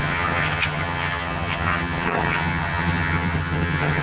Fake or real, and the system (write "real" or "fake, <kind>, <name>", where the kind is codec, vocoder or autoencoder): fake, vocoder, HiFi-GAN